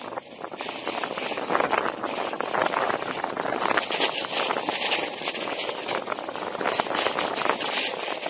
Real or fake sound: real